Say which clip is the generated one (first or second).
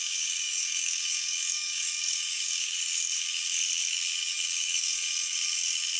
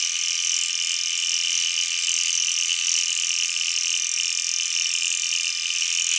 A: first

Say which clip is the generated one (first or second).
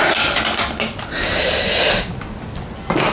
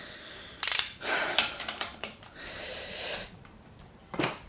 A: second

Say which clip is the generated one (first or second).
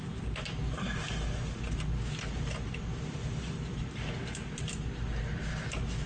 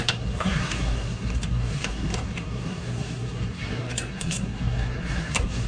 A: second